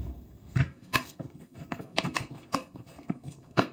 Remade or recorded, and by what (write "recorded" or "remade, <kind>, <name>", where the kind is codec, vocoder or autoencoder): remade, codec, SNAC